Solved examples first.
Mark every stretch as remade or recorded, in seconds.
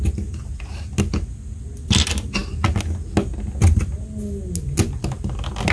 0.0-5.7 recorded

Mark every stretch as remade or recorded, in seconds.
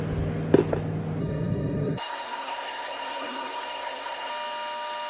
0.0-1.2 recorded; 1.2-4.3 remade; 4.3-5.1 recorded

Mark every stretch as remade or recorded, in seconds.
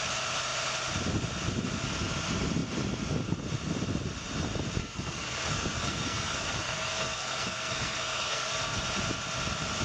0.0-4.8 recorded; 4.8-8.8 remade; 8.8-9.8 recorded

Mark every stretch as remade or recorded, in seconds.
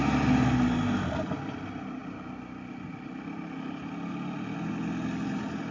0.0-5.7 recorded